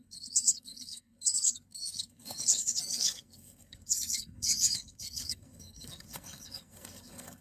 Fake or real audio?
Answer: fake